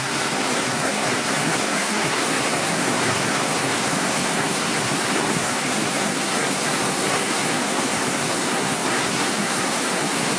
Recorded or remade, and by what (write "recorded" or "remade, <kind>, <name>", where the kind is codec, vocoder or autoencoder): remade, codec, SNAC